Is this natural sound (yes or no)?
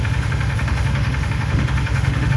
no